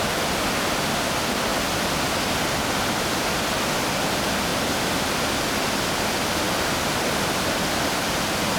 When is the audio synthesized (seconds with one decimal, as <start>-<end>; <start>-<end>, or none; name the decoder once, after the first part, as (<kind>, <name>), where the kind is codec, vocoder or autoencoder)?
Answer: none